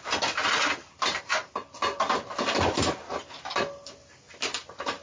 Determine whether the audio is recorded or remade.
recorded